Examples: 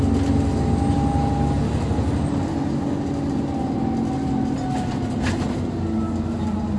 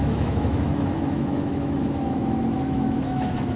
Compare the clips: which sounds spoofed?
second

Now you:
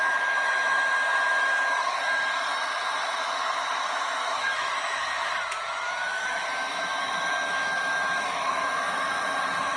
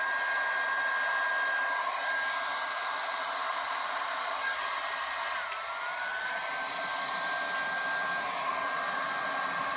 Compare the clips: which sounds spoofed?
first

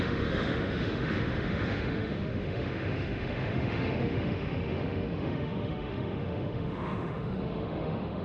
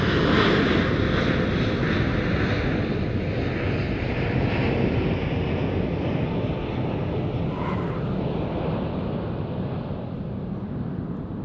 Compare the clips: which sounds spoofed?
first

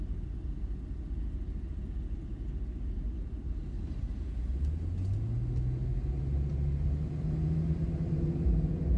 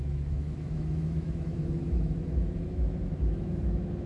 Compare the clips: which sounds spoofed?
second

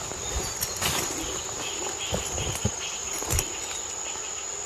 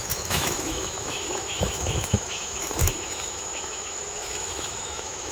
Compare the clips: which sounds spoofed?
second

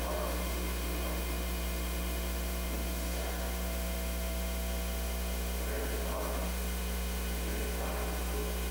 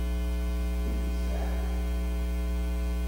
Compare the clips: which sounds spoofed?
first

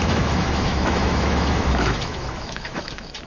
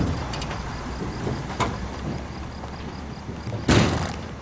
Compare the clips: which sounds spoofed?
first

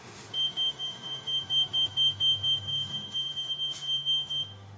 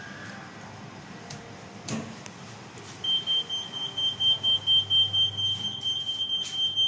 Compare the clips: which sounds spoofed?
first